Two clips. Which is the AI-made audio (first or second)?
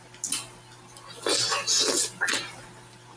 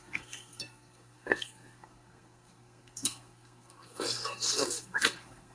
second